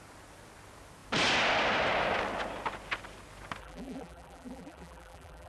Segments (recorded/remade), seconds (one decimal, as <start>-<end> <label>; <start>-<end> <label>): 0.0-3.6 recorded; 3.6-5.5 remade